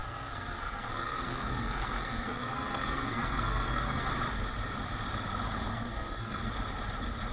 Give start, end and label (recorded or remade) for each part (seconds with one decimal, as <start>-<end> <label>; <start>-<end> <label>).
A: 0.0-4.1 remade; 4.1-5.7 recorded; 5.7-6.5 remade; 6.5-7.3 recorded